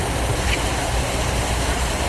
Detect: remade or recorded recorded